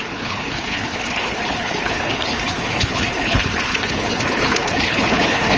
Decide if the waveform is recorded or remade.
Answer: remade